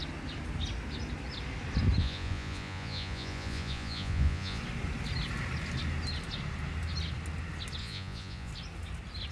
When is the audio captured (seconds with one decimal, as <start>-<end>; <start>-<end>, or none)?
0.0-2.0; 4.6-7.8; 8.5-9.3